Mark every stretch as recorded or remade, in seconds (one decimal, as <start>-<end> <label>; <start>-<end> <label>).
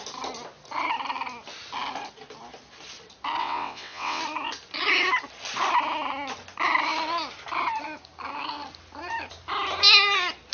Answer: 0.0-3.4 recorded; 3.4-4.2 remade; 4.2-10.5 recorded